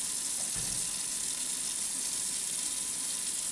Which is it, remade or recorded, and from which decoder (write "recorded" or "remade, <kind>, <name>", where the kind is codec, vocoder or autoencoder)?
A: recorded